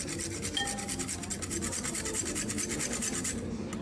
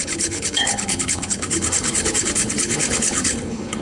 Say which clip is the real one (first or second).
first